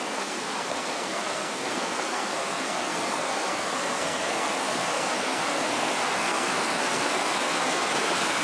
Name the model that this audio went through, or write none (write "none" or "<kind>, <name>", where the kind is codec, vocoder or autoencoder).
codec, SNAC